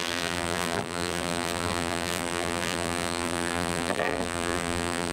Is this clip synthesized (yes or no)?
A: yes